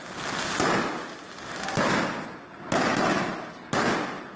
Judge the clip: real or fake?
real